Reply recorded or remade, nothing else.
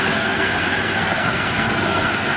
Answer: remade